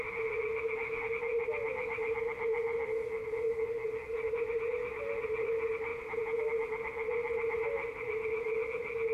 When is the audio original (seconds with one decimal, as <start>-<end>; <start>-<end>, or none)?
0.0-5.9; 6.4-9.1